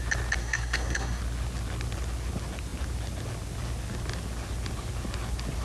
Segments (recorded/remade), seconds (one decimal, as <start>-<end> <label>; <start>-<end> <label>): 0.0-0.4 recorded; 0.4-1.2 remade; 1.2-5.6 recorded